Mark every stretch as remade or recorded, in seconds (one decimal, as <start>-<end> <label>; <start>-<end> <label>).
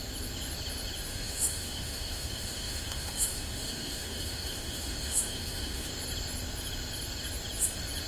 0.0-1.1 recorded; 1.1-5.9 remade; 5.9-8.1 recorded